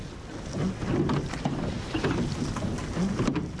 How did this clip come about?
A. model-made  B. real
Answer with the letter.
B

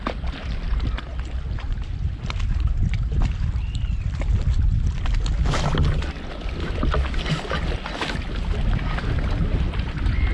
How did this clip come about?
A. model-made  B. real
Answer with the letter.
B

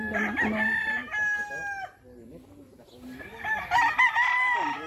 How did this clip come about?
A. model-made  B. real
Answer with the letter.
B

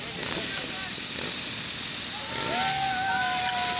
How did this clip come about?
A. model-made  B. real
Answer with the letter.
B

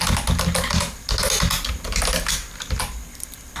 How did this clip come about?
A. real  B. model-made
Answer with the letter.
A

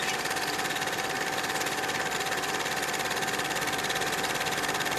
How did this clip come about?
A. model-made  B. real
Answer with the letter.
B